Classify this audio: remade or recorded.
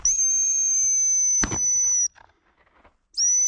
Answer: recorded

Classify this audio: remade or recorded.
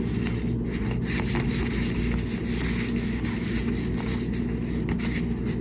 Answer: recorded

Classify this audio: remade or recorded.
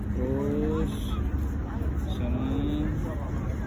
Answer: recorded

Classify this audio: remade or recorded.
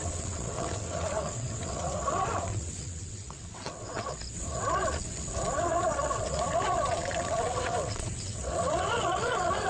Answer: remade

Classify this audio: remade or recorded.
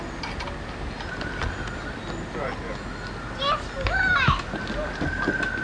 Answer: recorded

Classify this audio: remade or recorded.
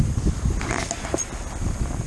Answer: recorded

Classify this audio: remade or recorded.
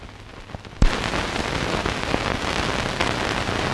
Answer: recorded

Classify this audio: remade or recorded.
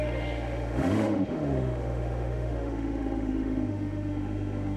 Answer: remade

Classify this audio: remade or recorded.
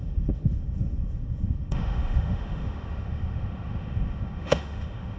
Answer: remade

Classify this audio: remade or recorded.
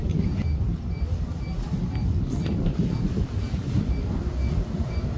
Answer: recorded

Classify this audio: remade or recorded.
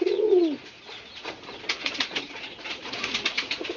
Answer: remade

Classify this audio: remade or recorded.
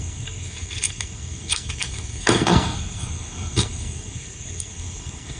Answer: remade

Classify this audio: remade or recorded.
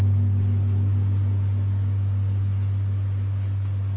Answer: recorded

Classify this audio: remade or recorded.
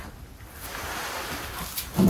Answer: recorded